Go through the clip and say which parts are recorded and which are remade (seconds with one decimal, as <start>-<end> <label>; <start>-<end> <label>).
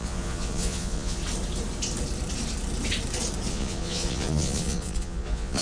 0.0-1.2 remade; 1.2-3.5 recorded; 3.5-5.6 remade